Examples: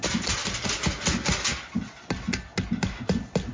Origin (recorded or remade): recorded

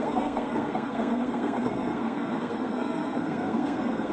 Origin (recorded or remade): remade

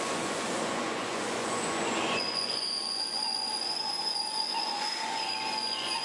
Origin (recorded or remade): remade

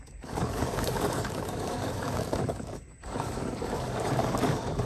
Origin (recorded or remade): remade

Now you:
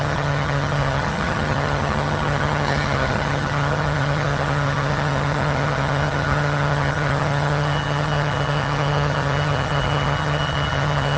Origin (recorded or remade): remade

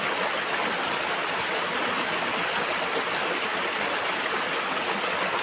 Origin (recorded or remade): recorded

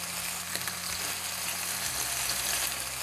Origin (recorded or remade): recorded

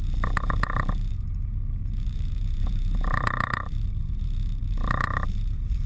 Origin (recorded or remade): remade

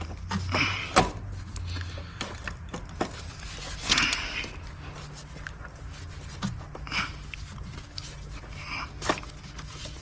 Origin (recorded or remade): recorded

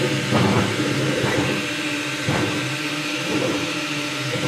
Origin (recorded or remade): remade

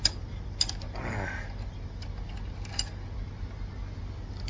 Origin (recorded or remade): recorded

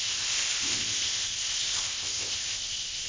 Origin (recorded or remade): remade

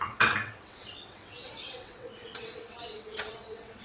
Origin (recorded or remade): remade